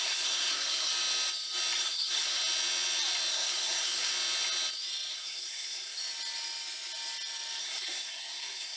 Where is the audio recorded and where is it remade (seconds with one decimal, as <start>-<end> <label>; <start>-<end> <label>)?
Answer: 0.0-0.9 remade; 0.9-1.8 recorded; 1.8-2.4 remade; 2.4-3.3 recorded; 3.3-4.1 remade; 4.1-5.1 recorded; 5.1-6.0 remade; 6.0-7.6 recorded; 7.6-8.8 remade